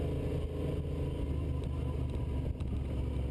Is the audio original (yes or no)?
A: yes